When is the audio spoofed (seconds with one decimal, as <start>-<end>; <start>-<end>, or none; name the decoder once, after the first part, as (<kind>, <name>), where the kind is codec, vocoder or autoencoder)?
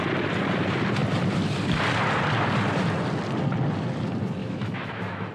4.4-5.3 (autoencoder, DAC-VAE)